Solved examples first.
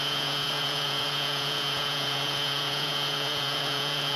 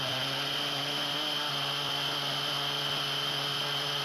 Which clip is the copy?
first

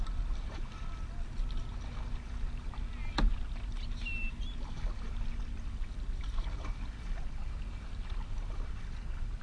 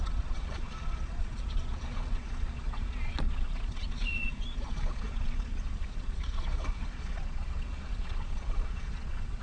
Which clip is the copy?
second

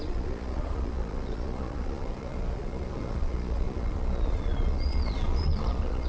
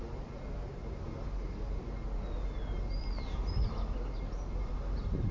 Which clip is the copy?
first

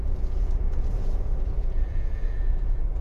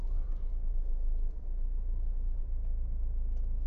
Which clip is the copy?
first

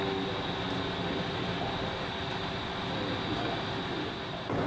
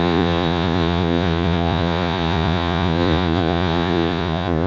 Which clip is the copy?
second